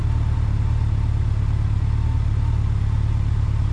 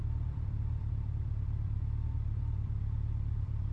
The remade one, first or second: second